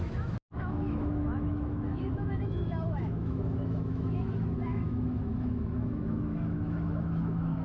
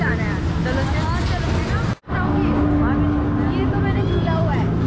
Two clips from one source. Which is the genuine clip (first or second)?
second